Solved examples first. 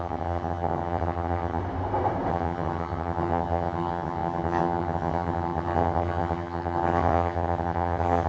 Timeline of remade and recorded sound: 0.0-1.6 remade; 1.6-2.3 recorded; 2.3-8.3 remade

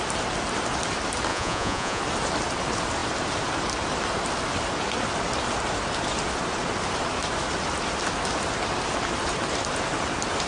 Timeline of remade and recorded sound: 0.0-1.3 recorded; 1.3-2.0 remade; 2.0-10.5 recorded

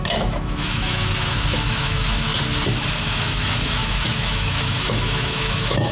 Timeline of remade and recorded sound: 0.0-2.3 remade; 2.3-2.9 recorded; 2.9-5.9 remade

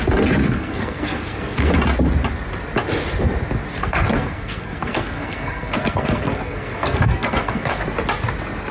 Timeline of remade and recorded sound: 0.0-0.4 recorded; 0.4-1.7 remade; 1.7-3.8 recorded; 3.8-7.8 remade; 7.8-8.7 recorded

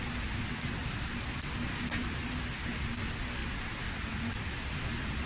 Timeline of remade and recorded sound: 0.0-5.3 recorded

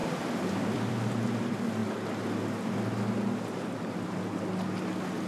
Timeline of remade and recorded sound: 0.0-0.9 remade; 0.9-5.3 recorded